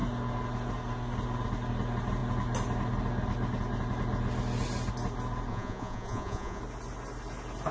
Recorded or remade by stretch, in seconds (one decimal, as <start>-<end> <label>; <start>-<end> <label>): 0.0-5.5 recorded; 5.5-6.6 remade; 6.6-7.7 recorded